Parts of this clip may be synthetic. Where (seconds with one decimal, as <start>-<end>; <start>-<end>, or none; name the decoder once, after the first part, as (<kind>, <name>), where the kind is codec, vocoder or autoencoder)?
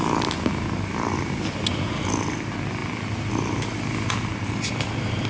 none